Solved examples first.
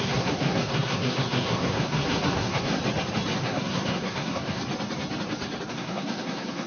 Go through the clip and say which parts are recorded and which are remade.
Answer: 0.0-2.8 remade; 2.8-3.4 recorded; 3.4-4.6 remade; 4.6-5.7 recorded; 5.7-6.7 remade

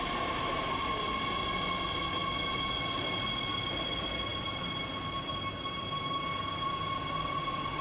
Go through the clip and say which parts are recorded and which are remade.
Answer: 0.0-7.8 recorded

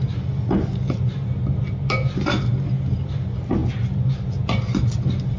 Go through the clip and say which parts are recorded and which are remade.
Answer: 0.0-5.4 recorded

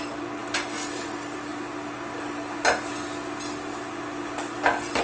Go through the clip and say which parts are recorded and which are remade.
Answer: 0.0-5.0 recorded

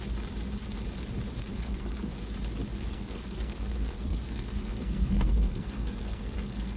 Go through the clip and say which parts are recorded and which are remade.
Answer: 0.0-1.4 recorded; 1.4-2.1 remade; 2.1-2.7 recorded; 2.7-6.8 remade

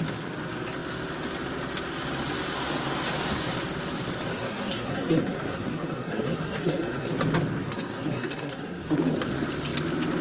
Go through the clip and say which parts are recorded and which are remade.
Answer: 0.0-4.3 recorded; 4.3-7.1 remade; 7.1-7.6 recorded; 7.6-9.0 remade; 9.0-10.2 recorded

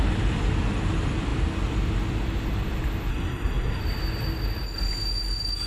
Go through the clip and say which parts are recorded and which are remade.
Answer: 0.0-3.1 recorded; 3.1-3.8 remade; 3.8-5.7 recorded